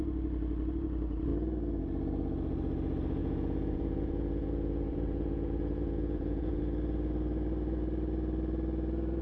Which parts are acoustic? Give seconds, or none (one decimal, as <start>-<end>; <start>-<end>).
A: 0.0-3.2; 6.6-9.2